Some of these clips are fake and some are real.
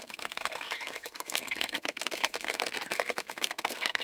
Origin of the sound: fake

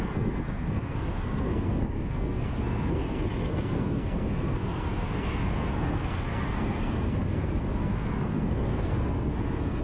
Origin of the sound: fake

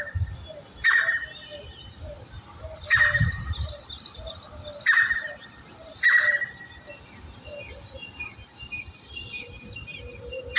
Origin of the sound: real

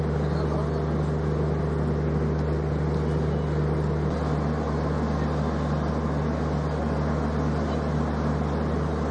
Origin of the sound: real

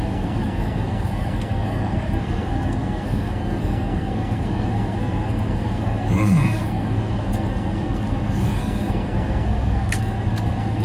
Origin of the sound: fake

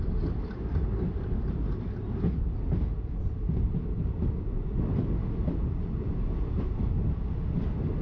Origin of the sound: real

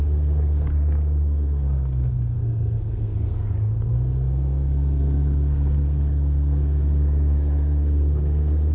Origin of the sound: fake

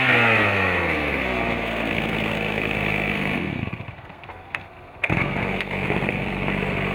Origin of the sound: fake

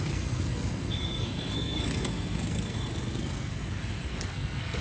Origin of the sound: fake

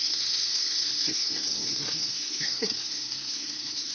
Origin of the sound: fake